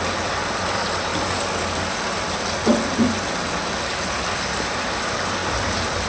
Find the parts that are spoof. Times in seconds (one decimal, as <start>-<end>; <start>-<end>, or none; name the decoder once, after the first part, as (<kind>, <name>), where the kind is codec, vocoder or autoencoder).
none